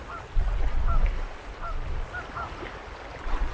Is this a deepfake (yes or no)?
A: no